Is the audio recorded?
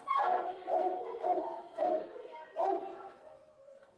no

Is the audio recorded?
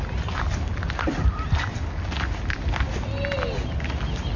yes